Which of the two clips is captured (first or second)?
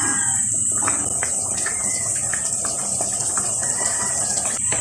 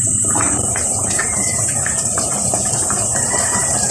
first